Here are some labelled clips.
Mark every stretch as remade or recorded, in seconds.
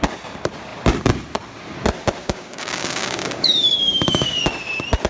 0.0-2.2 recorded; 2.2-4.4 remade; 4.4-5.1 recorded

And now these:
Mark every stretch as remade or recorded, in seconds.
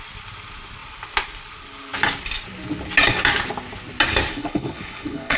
0.0-4.3 recorded; 4.3-5.4 remade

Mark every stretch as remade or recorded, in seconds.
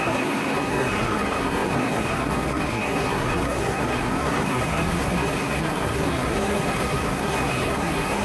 0.0-8.2 remade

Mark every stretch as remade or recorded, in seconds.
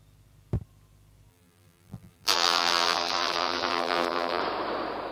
0.0-1.3 recorded; 1.3-4.4 remade; 4.4-5.1 recorded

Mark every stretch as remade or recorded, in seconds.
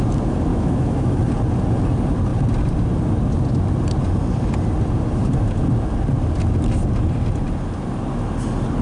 0.0-0.5 recorded; 0.5-1.2 remade; 1.2-8.8 recorded